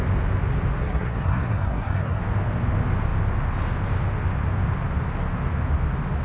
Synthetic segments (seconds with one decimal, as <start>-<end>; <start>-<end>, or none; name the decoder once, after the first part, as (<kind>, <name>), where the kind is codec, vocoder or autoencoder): 0.8-2.2 (codec, SNAC)